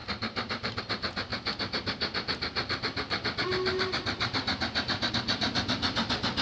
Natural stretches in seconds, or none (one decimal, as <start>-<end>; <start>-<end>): 0.8-6.4